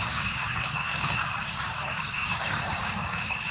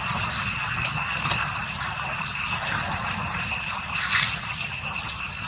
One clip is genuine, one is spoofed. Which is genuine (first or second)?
second